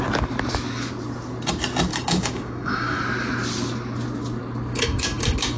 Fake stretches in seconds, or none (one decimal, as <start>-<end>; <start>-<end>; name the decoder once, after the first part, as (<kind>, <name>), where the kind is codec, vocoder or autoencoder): 1.9-3.0 (codec, DAC); 4.7-5.6